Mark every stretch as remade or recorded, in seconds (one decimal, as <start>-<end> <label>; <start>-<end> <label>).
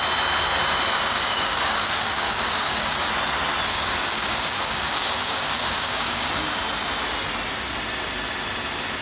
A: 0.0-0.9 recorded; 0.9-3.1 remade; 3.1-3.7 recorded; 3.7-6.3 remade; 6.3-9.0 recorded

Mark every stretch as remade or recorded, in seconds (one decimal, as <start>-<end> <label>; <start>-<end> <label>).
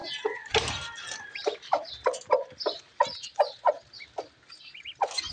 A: 0.0-3.2 recorded; 3.2-3.8 remade; 3.8-5.3 recorded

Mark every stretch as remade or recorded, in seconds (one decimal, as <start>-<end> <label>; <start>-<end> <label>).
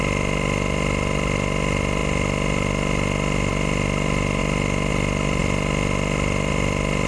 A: 0.0-7.1 recorded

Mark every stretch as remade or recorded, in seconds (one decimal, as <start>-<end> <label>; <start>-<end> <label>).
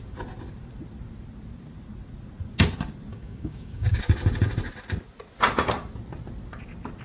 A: 0.0-3.1 recorded; 3.1-4.0 remade; 4.0-7.0 recorded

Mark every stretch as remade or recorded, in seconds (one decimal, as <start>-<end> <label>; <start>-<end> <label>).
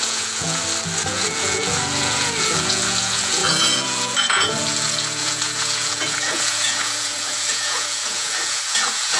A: 0.0-0.6 remade; 0.6-1.1 recorded; 1.1-9.2 remade